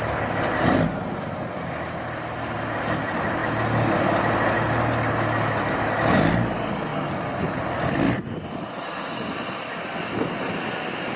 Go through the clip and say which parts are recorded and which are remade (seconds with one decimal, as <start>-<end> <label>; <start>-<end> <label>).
0.0-11.2 recorded